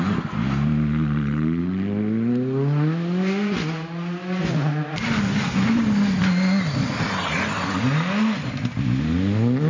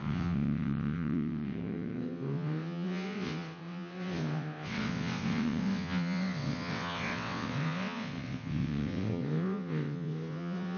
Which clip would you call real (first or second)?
first